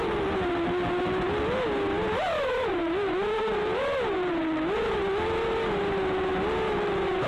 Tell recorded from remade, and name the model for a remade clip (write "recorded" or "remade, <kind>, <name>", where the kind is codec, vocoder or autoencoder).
recorded